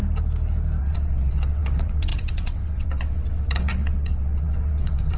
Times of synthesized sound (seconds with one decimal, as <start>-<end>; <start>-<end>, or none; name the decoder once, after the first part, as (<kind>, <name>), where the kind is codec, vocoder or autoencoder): 0.8-5.2 (vocoder, WaveNeXt)

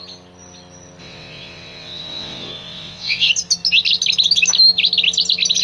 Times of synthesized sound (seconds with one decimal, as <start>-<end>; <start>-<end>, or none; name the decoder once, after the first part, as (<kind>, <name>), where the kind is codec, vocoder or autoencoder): 1.0-3.3 (vocoder, WaveNeXt)